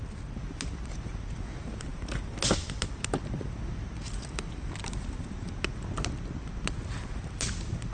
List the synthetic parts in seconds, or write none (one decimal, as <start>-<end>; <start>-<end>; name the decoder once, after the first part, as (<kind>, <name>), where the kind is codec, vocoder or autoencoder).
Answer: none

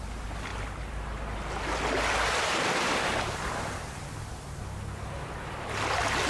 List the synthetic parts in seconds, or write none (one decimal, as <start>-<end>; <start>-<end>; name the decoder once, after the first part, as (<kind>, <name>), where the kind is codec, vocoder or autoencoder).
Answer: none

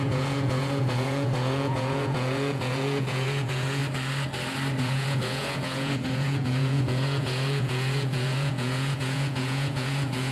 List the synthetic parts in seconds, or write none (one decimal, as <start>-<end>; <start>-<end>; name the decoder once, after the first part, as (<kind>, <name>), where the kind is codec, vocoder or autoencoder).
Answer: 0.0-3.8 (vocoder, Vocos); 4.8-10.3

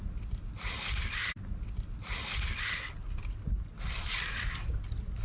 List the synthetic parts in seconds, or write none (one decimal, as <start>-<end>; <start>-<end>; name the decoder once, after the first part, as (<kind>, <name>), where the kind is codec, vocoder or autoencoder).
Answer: none

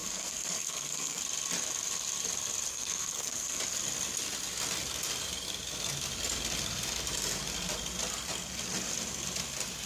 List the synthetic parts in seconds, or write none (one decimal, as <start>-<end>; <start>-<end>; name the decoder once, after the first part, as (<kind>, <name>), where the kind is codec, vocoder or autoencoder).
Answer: 0.0-1.2 (codec, SNAC); 2.7-3.6

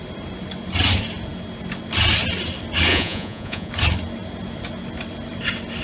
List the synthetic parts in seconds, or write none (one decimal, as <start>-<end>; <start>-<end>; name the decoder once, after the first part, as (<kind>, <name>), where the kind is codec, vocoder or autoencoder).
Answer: 2.9-3.7 (vocoder, Vocos)